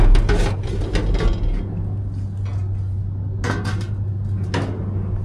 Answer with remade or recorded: recorded